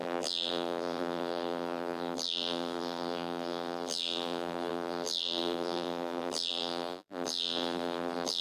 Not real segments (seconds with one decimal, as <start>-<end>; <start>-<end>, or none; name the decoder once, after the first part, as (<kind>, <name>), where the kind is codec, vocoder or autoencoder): 0.0-8.4 (vocoder, BigVGAN v2)